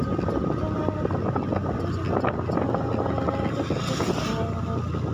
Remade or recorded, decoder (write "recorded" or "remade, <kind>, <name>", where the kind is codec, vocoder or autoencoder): recorded